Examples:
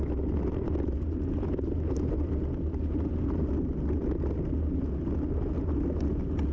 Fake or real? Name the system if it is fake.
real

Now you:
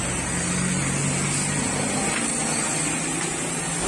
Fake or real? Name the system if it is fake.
real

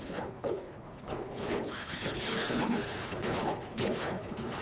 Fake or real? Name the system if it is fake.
fake, codec, HILCodec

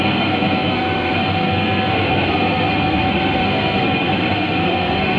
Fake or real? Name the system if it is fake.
fake, codec, SNAC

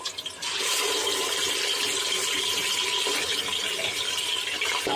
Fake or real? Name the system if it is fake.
real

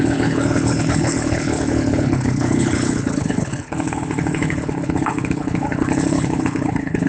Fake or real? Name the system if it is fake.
fake, codec, HILCodec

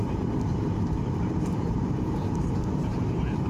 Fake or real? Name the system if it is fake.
fake, vocoder, BigVGAN v2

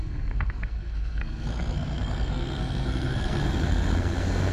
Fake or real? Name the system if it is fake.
fake, codec, SNAC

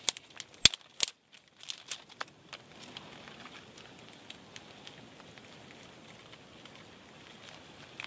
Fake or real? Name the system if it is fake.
real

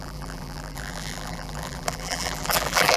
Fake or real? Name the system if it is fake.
fake, vocoder, BigVGAN v2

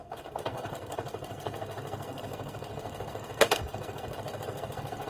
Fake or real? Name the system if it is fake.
fake, codec, SNAC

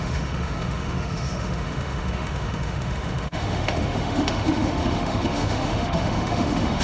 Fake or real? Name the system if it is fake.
fake, autoencoder, DAC-VAE